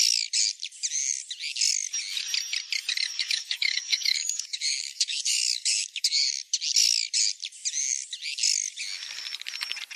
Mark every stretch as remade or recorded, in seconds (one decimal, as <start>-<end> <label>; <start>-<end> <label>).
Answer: 0.0-3.1 recorded; 3.1-6.3 remade; 6.3-10.0 recorded